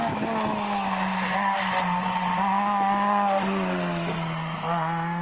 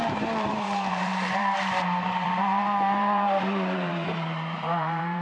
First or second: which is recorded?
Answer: first